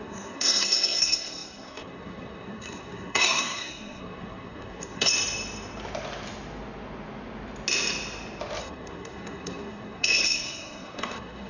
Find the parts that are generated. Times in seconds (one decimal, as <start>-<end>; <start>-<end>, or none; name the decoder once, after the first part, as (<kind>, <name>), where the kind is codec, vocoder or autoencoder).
0.0-5.1 (codec, SNAC); 8.6-11.5

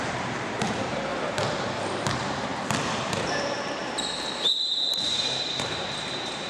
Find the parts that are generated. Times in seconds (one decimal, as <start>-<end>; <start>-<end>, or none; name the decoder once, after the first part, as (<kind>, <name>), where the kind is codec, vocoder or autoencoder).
0.0-2.5 (vocoder, BigVGAN v2); 3.0-6.5

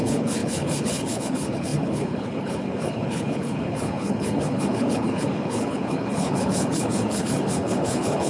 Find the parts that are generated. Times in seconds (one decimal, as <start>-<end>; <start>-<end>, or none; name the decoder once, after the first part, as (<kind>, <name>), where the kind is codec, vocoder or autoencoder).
0.0-8.3 (codec, HILCodec)

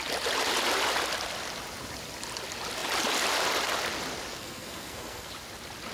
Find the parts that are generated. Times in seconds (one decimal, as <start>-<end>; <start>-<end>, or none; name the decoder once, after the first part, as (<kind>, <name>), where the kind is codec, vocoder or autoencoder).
4.3-5.3 (codec, SNAC)

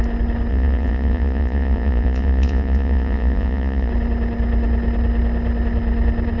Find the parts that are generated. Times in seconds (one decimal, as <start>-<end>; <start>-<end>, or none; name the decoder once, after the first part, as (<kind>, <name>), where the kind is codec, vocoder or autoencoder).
0.5-3.9 (vocoder, Vocos)

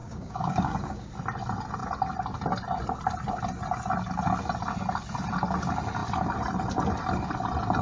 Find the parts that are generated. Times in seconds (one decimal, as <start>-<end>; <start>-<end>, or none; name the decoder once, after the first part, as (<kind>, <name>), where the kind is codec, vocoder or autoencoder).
0.0-1.1 (codec, DAC)

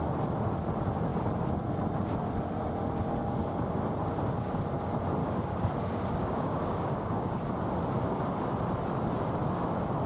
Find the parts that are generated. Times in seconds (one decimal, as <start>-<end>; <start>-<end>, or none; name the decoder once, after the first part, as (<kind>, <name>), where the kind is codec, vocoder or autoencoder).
3.2-3.7 (codec, DAC); 5.2-7.4